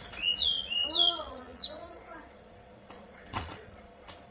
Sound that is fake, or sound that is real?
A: fake